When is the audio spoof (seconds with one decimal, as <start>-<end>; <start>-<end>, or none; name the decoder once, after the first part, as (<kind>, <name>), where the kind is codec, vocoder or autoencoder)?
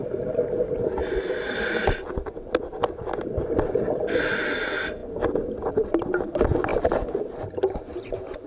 none